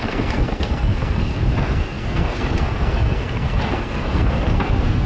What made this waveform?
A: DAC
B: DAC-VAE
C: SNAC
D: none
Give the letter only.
C